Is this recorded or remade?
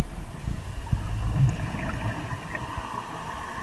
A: recorded